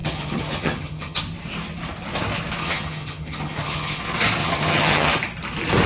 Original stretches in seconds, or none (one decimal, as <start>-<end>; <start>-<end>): 1.2-2.6; 4.0-4.4; 5.1-5.9